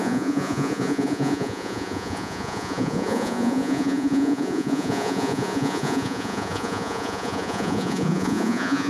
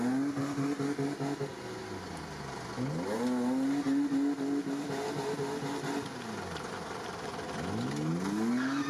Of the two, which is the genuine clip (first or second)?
second